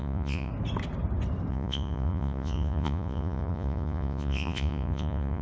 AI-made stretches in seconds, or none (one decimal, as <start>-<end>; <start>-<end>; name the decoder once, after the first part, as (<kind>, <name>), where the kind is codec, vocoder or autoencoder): 0.0-0.5 (vocoder, Vocos); 1.5-5.4